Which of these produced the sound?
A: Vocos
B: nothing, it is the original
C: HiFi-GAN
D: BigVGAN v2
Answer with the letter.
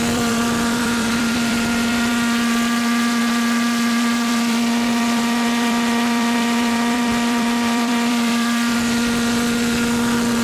D